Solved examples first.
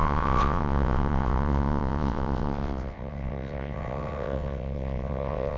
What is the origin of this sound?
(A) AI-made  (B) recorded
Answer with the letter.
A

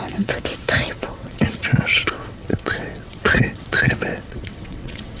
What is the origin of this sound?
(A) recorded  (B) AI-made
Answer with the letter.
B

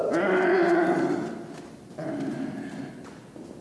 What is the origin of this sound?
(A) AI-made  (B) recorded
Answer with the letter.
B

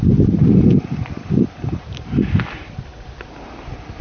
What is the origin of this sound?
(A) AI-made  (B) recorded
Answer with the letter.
B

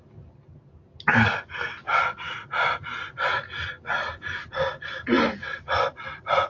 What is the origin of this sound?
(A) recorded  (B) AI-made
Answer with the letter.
A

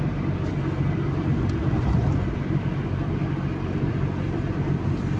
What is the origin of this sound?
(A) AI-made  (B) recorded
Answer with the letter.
B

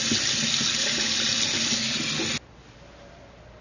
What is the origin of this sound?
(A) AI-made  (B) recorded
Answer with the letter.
B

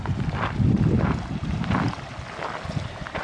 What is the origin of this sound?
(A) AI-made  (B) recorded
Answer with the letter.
B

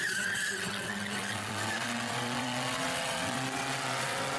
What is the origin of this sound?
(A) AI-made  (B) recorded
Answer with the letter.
A